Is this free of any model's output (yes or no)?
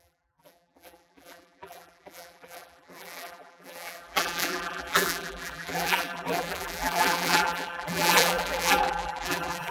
no